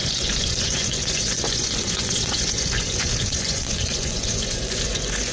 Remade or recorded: remade